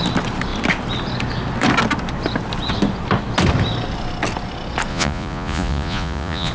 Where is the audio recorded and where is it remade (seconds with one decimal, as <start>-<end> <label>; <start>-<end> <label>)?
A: 0.0-4.9 recorded; 4.9-6.5 remade